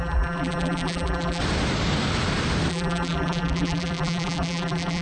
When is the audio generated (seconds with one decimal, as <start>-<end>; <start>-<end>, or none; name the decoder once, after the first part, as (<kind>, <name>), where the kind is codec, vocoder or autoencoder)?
0.0-1.4 (vocoder, BigVGAN v2); 2.7-5.0